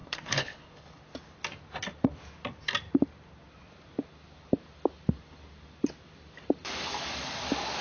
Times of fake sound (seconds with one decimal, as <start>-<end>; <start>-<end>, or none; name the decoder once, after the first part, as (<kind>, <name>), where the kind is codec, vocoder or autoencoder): 0.0-1.0 (codec, HILCodec)